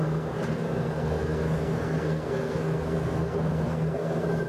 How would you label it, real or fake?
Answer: fake